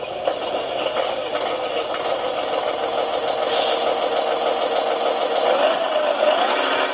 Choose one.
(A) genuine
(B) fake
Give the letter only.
A